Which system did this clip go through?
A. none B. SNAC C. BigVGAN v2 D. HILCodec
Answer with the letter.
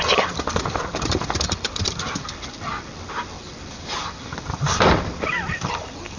C